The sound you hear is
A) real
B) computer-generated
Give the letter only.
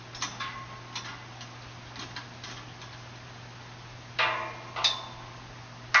A